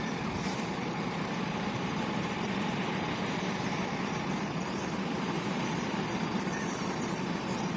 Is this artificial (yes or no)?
yes